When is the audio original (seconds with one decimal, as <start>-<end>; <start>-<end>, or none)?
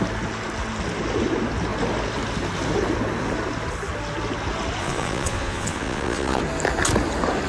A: 0.0-4.8; 6.4-7.5